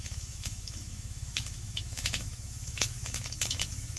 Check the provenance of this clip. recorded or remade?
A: remade